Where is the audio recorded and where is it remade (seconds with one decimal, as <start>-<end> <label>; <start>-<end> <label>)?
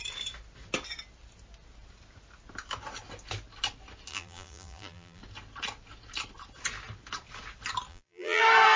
0.0-4.1 recorded; 4.1-5.2 remade; 5.2-7.9 recorded; 7.9-8.4 remade; 8.4-8.8 recorded